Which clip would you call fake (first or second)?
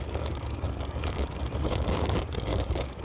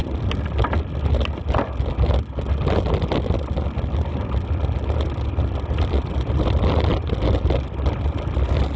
first